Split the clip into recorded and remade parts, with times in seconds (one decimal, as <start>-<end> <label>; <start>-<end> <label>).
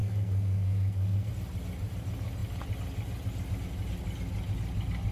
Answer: 0.0-1.3 remade; 1.3-5.1 recorded